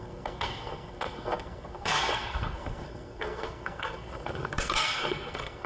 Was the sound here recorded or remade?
remade